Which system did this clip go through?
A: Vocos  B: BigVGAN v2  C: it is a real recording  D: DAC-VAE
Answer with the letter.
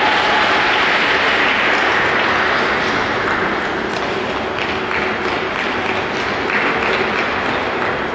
C